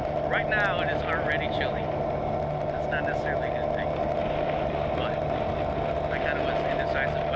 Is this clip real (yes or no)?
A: yes